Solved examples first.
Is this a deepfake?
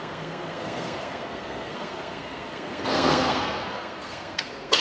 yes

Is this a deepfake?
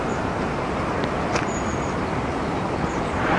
no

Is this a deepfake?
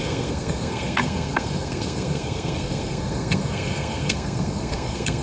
yes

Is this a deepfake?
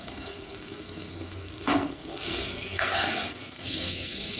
yes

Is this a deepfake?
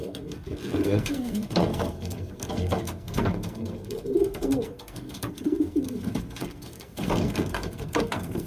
yes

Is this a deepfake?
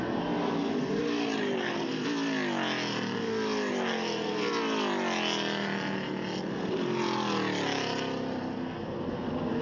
no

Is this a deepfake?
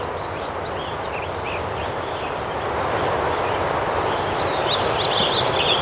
no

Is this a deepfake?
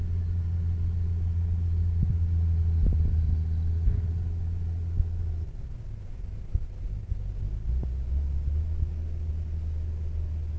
no